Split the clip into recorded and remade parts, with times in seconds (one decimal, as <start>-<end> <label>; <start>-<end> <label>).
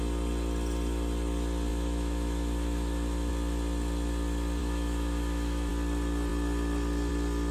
0.0-1.7 recorded; 1.7-3.3 remade; 3.3-4.6 recorded; 4.6-5.7 remade; 5.7-7.5 recorded